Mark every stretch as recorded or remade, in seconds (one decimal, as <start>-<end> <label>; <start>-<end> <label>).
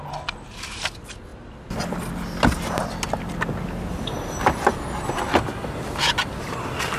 0.0-7.0 recorded